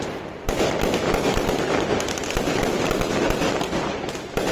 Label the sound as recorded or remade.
recorded